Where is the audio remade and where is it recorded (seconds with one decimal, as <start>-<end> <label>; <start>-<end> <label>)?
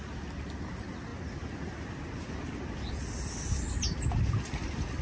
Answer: 0.0-5.0 recorded